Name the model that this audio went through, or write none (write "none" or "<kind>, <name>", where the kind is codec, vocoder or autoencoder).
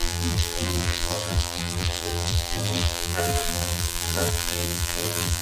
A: vocoder, BigVGAN v2